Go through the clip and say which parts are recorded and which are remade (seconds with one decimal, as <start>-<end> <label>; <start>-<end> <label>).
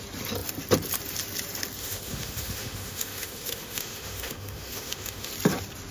0.0-1.8 recorded; 1.8-5.3 remade; 5.3-5.9 recorded